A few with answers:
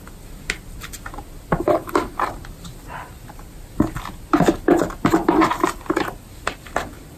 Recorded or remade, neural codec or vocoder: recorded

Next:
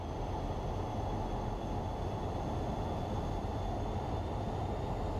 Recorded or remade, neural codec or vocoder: recorded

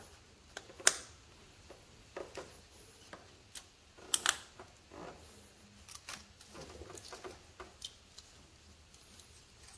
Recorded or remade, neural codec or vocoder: recorded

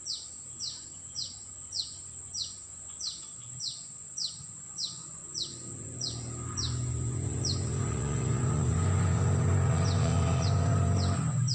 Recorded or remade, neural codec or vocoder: remade, vocoder, Vocos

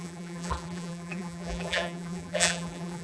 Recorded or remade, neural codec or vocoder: remade, vocoder, BigVGAN v2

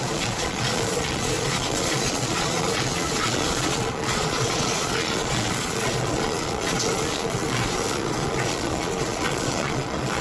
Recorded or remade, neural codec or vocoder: remade, vocoder, Vocos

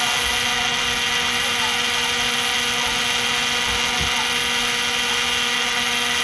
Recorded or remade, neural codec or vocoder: recorded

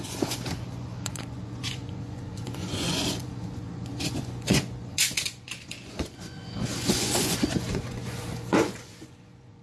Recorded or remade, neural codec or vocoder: remade, vocoder, Vocos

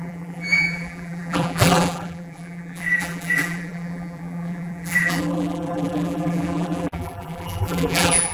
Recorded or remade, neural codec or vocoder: remade, vocoder, BigVGAN v2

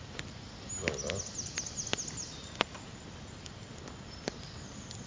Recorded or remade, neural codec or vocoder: recorded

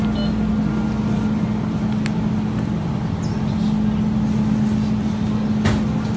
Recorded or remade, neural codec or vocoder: recorded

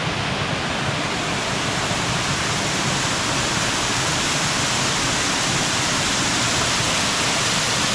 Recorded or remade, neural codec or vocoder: recorded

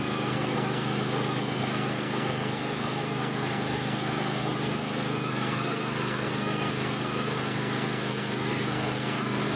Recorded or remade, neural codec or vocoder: remade, codec, SNAC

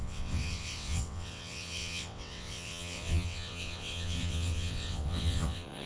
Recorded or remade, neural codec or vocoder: remade, vocoder, WaveNeXt